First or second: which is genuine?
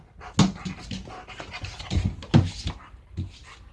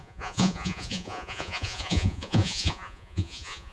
first